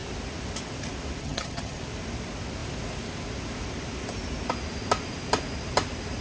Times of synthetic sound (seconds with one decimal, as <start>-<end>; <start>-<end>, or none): 1.2-1.8